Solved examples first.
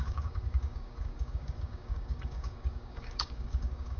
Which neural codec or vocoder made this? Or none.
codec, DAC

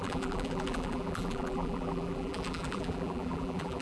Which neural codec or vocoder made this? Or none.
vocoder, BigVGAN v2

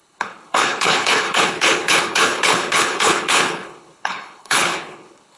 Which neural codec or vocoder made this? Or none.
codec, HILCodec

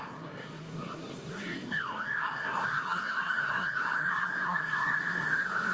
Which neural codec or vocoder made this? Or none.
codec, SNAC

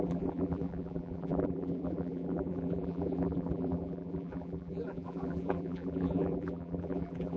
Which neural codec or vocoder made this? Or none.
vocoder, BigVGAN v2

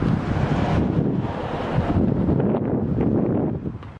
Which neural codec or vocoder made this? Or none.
none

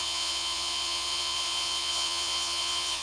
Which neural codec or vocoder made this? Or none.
vocoder, Vocos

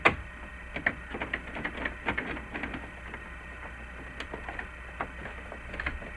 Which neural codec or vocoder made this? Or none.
none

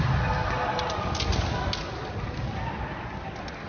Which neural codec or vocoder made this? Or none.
none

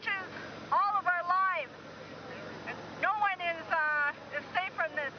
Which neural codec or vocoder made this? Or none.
none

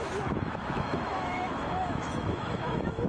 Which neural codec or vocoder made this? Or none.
autoencoder, DAC-VAE